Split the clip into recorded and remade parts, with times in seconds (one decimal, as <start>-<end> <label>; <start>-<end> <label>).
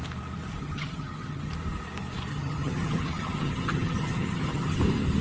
0.0-0.6 recorded; 0.6-1.5 remade; 1.5-2.3 recorded; 2.3-4.8 remade; 4.8-5.2 recorded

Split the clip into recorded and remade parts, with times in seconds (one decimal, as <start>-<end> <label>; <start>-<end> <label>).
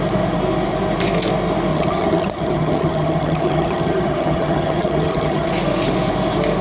0.0-1.7 recorded; 1.7-5.5 remade; 5.5-6.6 recorded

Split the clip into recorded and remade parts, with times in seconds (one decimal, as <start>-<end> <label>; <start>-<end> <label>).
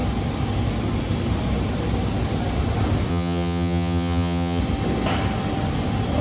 0.0-3.1 recorded; 3.1-4.6 remade; 4.6-6.2 recorded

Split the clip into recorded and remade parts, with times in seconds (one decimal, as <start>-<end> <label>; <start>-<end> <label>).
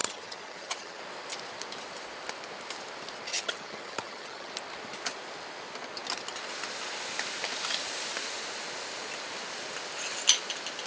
0.0-1.0 remade; 1.0-3.3 recorded; 3.3-4.5 remade; 4.5-10.9 recorded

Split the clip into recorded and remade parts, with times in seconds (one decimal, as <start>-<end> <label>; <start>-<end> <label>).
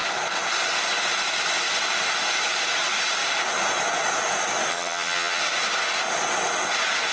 0.0-4.7 recorded; 4.7-5.4 remade; 5.4-7.1 recorded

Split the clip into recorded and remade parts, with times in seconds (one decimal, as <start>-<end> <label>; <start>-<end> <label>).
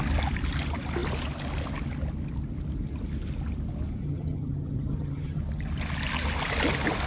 0.0-4.0 recorded; 4.0-5.4 remade; 5.4-7.1 recorded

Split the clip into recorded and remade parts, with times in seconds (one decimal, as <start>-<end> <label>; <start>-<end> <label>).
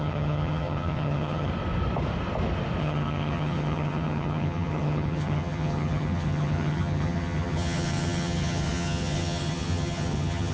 0.0-1.5 remade; 1.5-2.8 recorded; 2.8-10.5 remade